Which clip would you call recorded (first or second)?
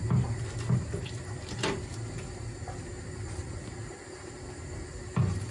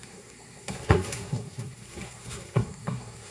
first